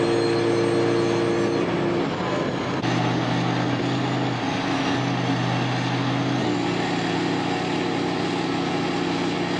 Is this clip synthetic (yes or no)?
no